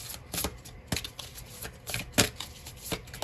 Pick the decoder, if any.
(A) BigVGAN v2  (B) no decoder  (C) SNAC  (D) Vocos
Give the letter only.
B